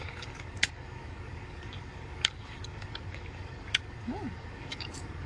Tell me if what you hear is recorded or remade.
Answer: remade